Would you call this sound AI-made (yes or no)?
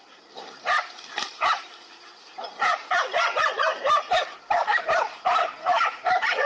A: yes